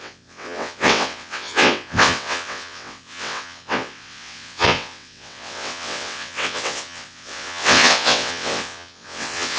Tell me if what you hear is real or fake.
fake